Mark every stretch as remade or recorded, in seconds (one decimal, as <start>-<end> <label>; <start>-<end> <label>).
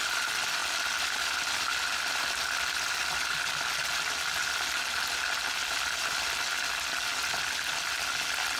0.0-8.6 recorded